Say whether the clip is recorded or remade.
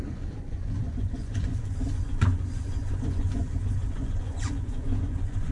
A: remade